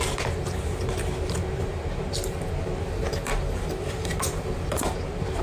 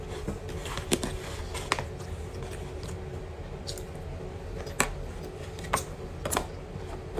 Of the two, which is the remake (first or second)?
first